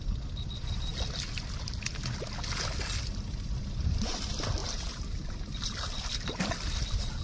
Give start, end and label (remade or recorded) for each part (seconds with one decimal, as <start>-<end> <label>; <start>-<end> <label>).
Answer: 0.0-4.6 recorded; 4.6-5.9 remade; 5.9-7.2 recorded